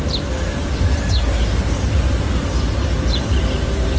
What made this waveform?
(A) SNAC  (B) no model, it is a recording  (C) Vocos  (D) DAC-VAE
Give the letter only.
B